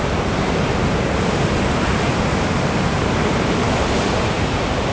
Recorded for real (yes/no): no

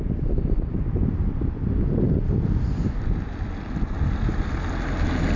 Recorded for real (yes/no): yes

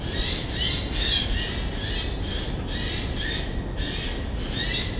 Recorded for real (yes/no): yes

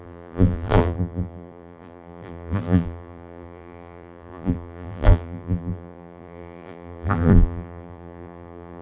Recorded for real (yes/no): no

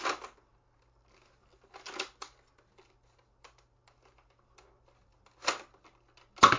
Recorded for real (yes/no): yes